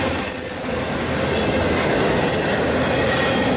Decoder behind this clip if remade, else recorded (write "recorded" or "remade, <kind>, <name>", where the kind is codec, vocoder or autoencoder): recorded